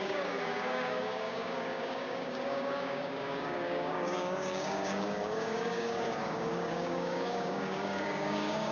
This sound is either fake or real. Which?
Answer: fake